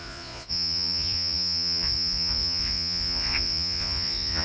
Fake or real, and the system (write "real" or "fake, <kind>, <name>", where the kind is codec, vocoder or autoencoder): fake, vocoder, Vocos